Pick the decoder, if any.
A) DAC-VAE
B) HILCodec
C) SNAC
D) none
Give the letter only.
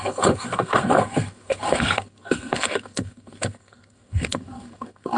C